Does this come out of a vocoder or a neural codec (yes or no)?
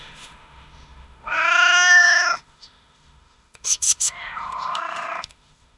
yes